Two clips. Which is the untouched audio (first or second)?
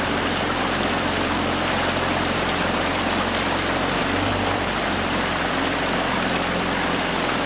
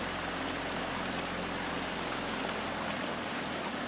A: second